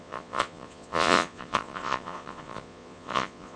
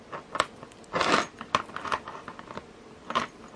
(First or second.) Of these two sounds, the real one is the second